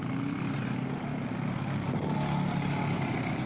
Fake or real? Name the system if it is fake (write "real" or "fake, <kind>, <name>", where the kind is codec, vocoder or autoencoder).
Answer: real